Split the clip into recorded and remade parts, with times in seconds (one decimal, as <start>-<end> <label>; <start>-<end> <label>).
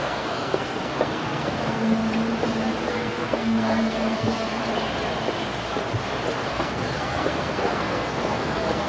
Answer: 0.0-2.0 remade; 2.0-2.9 recorded; 2.9-4.6 remade; 4.6-6.5 recorded; 6.5-8.9 remade